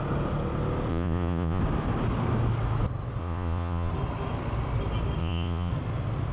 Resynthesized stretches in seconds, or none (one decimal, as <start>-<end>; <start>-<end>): 0.9-1.6; 3.2-3.9; 5.2-5.7